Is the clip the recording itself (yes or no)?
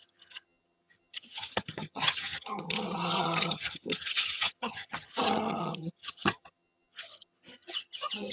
no